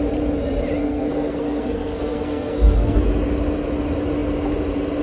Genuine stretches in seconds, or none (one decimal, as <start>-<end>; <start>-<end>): 0.0-0.8; 3.0-5.0